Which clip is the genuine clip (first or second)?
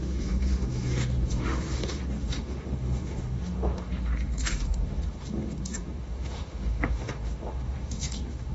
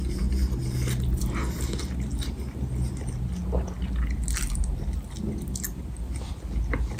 second